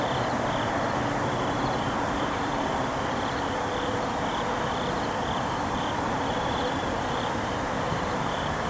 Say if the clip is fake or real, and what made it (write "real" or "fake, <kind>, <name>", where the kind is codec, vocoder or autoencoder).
fake, vocoder, BigVGAN v2